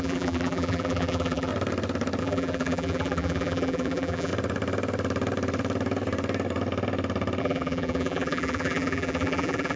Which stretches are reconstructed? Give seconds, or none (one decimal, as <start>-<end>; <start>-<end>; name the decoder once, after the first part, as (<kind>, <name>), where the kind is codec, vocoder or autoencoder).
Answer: 0.0-1.5 (vocoder, BigVGAN v2); 2.2-4.3; 7.4-9.8